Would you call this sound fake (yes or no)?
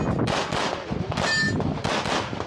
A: no